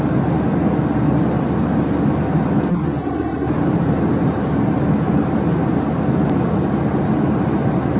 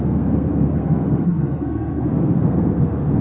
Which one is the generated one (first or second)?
second